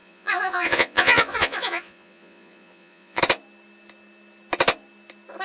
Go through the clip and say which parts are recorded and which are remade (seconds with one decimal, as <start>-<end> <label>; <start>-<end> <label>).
0.0-3.2 remade; 3.2-5.4 recorded